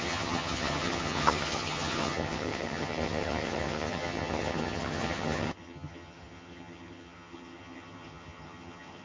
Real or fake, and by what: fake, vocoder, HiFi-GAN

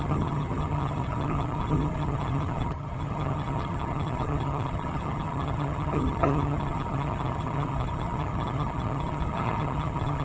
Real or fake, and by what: fake, vocoder, HiFi-GAN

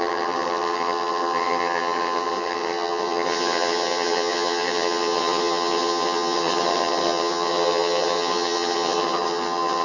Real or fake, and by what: fake, vocoder, HiFi-GAN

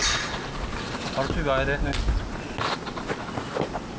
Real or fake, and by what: real